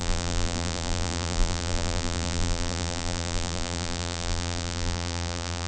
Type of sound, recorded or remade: remade